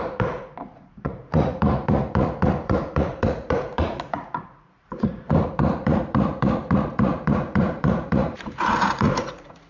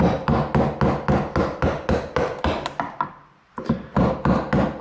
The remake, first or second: first